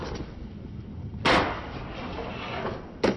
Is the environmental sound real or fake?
real